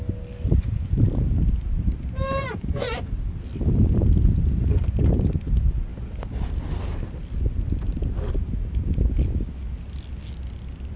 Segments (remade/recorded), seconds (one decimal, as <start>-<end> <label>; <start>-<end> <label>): 0.0-2.5 recorded; 2.5-3.1 remade; 3.1-11.0 recorded